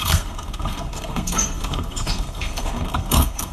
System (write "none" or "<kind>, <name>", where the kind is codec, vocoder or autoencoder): codec, SNAC